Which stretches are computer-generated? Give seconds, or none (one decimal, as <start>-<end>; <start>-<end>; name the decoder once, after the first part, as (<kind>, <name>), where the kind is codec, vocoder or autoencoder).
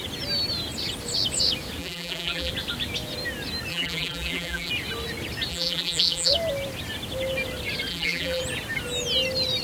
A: 1.8-2.5 (vocoder, BigVGAN v2); 3.7-4.7; 5.5-6.3; 7.9-8.4